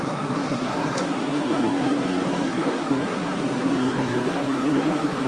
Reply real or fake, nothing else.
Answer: fake